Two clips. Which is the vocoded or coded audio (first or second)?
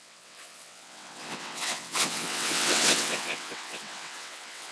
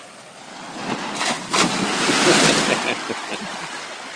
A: first